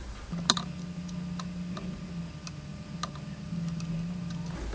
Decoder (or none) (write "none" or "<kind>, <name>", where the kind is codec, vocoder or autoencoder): none